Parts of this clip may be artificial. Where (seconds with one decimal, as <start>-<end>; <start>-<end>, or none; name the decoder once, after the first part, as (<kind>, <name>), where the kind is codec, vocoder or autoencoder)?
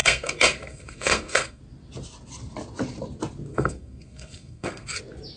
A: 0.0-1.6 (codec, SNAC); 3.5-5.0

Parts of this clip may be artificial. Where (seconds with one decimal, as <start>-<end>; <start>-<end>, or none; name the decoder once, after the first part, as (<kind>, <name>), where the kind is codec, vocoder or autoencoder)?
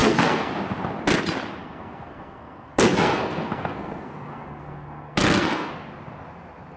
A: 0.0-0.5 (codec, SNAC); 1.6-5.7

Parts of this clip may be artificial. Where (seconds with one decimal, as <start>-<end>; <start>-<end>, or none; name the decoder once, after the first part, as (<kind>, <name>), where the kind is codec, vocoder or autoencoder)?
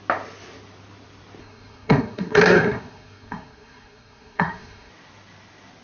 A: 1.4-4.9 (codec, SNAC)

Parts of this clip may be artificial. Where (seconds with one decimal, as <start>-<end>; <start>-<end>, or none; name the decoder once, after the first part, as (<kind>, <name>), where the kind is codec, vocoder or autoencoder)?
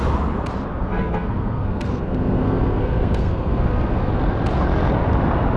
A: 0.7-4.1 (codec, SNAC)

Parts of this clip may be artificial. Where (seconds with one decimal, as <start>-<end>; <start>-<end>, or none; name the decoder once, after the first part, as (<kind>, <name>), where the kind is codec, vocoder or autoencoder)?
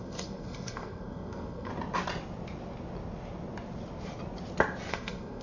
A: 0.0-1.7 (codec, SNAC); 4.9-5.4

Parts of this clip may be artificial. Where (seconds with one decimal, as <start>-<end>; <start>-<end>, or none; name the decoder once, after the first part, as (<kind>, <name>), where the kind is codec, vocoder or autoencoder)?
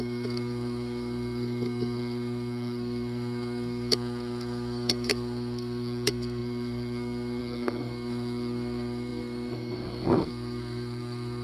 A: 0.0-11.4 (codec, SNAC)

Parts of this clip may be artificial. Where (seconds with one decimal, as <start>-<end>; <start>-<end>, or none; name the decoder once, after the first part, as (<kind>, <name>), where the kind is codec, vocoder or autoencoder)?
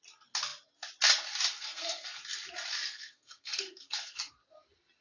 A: 1.6-2.2 (codec, SNAC); 2.9-4.3